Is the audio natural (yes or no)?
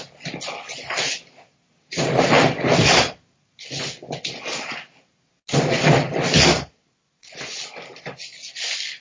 yes